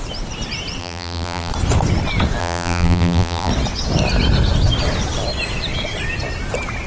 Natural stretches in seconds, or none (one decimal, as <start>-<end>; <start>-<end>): 0.0-0.8; 1.5-2.4; 3.5-6.9